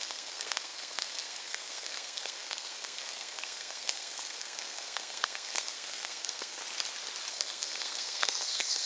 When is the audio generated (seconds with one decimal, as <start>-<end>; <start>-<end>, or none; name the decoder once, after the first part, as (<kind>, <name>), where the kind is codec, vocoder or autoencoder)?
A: 0.0-6.6 (codec, SNAC); 7.3-8.9